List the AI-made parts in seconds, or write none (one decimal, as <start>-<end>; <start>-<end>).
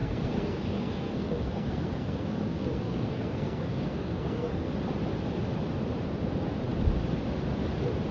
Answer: 0.0-4.7